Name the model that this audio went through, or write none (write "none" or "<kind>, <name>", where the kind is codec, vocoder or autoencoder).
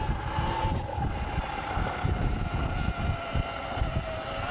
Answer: none